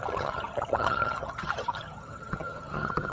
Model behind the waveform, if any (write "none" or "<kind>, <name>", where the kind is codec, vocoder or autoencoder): vocoder, HiFi-GAN